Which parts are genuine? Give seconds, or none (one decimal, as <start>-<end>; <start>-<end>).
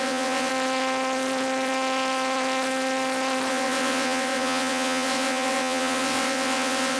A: 0.5-3.5